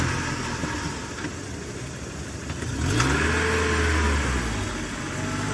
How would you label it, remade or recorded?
recorded